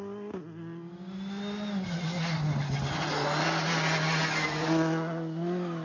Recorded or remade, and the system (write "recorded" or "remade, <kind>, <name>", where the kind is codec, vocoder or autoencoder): recorded